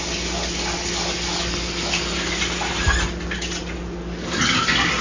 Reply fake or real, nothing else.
real